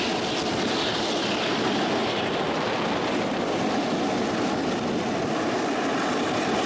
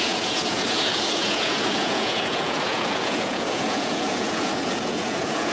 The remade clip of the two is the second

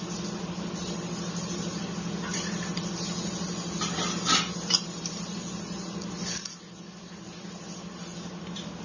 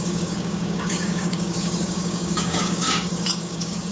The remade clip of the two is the second